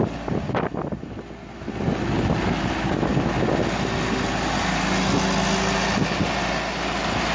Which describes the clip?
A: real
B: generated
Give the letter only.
A